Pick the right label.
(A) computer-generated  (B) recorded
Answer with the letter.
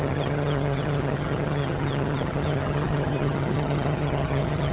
A